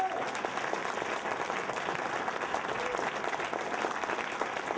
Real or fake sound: real